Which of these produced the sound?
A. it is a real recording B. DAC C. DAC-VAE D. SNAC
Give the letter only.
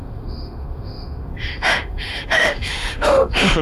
C